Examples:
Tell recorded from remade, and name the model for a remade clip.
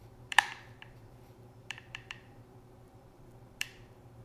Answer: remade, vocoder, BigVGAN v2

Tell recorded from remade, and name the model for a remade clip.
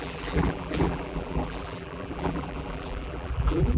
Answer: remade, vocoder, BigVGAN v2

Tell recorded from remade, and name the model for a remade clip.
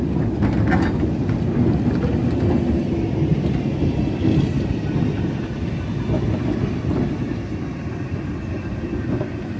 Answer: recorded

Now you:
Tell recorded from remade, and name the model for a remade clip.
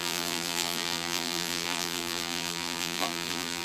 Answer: remade, vocoder, BigVGAN v2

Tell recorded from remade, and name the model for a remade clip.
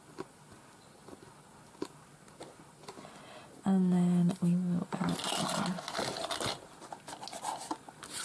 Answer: recorded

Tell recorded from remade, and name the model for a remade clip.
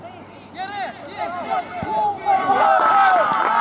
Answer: recorded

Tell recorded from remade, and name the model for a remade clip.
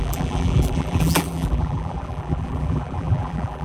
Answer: remade, vocoder, BigVGAN v2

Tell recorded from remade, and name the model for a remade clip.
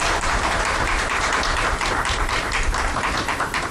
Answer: remade, vocoder, BigVGAN v2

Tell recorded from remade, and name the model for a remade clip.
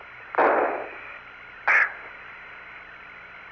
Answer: recorded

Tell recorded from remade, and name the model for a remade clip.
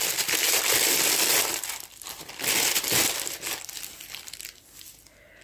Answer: remade, vocoder, BigVGAN v2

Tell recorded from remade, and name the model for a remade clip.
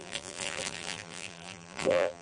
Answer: remade, vocoder, BigVGAN v2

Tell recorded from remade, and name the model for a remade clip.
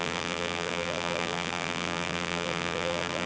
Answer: remade, vocoder, BigVGAN v2